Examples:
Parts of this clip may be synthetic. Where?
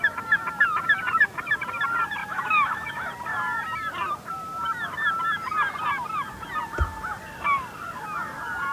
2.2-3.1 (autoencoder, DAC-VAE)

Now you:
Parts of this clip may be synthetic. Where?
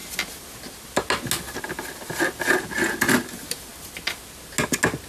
none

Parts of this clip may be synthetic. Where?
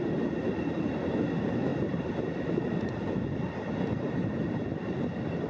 none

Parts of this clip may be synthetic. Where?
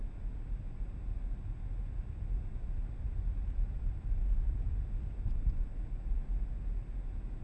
2.8-5.8 (vocoder, BigVGAN v2)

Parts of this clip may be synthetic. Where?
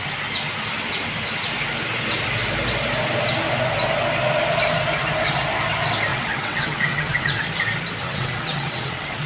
6.1-7.4 (vocoder, WaveNeXt); 8.0-9.3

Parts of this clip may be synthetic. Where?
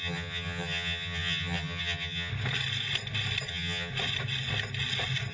0.0-2.3 (vocoder, HiFi-GAN); 3.5-3.9